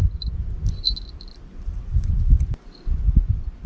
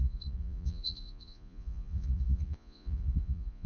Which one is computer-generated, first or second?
second